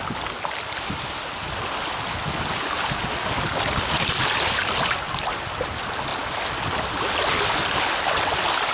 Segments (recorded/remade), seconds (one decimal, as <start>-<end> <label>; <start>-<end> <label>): 0.0-8.7 recorded